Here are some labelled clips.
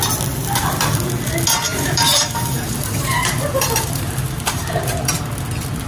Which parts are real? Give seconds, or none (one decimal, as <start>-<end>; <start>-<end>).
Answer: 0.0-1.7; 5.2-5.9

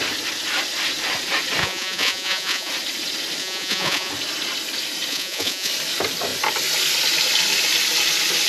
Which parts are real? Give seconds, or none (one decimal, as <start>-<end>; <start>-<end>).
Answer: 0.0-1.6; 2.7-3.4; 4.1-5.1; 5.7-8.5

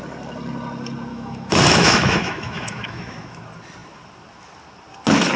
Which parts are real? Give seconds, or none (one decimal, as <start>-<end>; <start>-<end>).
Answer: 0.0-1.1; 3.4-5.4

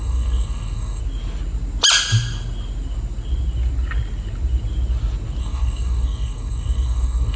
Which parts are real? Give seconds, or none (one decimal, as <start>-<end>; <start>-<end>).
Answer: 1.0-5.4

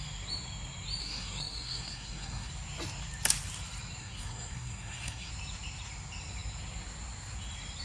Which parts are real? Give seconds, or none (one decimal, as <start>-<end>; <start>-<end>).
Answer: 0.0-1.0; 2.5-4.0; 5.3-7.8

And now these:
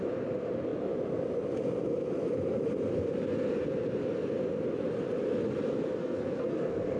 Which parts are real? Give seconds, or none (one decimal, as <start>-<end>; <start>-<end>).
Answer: 0.0-6.0